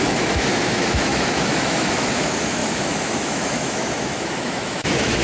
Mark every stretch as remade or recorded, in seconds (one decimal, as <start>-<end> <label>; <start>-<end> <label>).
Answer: 0.0-5.2 remade